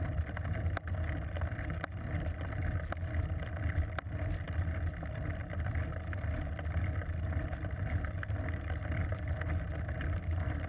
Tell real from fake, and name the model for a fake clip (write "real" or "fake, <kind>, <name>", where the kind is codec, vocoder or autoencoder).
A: real